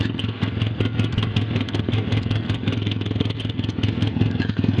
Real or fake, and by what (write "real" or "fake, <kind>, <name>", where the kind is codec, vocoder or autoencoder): fake, codec, SNAC